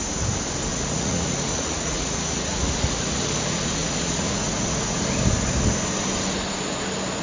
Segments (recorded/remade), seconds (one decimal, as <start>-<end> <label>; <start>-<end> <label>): 0.0-0.7 recorded; 0.7-5.0 remade; 5.0-7.2 recorded